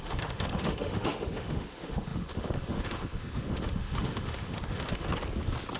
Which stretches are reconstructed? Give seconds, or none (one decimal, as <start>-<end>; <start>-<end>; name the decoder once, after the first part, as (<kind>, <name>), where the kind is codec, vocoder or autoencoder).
0.0-5.1 (autoencoder, DAC-VAE)